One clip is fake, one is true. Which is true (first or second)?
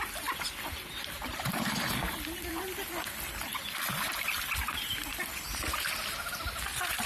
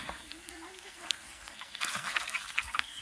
first